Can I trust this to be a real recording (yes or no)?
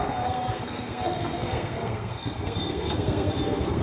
no